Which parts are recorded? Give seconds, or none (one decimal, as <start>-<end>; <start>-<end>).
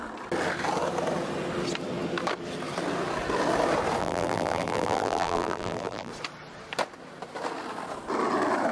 0.0-4.0; 6.1-8.7